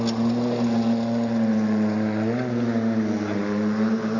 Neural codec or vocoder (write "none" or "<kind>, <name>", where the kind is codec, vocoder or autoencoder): none